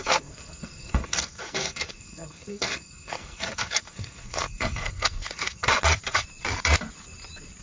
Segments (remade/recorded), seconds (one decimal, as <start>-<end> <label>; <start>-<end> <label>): 0.0-5.7 remade; 5.7-7.6 recorded